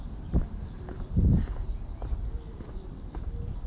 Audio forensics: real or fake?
real